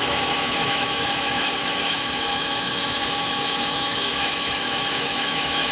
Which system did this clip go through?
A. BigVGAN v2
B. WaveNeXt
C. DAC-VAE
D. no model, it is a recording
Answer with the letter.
C